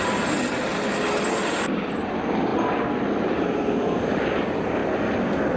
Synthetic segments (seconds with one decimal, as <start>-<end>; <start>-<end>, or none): 0.0-0.7; 1.6-2.5; 3.2-4.8